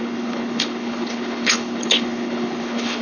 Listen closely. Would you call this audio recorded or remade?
remade